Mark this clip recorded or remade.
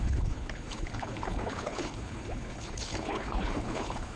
remade